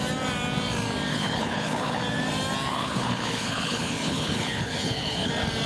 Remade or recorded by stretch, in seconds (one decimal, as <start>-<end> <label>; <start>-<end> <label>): 0.0-1.1 recorded; 1.1-2.0 remade; 2.0-2.7 recorded; 2.7-5.3 remade; 5.3-5.7 recorded